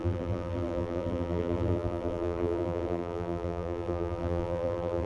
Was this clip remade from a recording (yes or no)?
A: yes